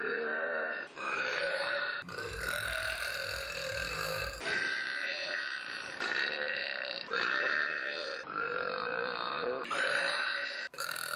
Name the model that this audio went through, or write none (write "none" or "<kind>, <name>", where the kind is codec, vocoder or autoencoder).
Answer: vocoder, BigVGAN v2